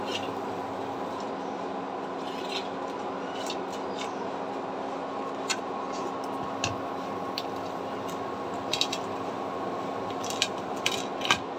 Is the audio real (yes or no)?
yes